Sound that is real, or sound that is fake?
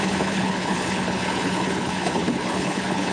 fake